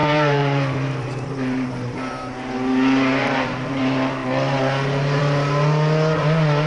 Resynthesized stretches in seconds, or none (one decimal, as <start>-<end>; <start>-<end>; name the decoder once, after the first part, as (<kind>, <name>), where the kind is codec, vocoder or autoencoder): 0.0-2.0 (vocoder, BigVGAN v2); 3.2-3.8